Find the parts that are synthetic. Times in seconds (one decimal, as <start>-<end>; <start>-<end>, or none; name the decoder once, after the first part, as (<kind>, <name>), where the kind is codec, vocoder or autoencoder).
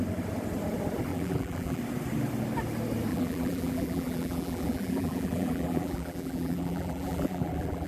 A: 1.1-1.8 (vocoder, BigVGAN v2); 3.1-7.9